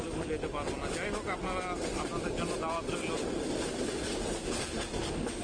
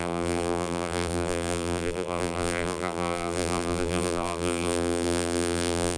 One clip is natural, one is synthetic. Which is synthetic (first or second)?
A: second